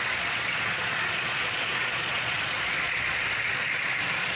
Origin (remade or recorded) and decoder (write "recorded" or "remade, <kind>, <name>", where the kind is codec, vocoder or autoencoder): remade, vocoder, Vocos